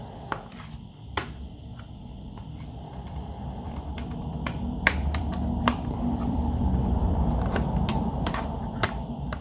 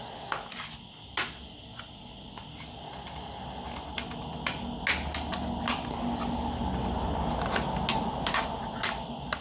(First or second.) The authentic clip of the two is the second